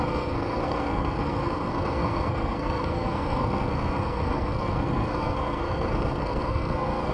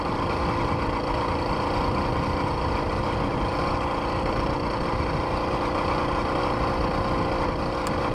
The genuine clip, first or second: second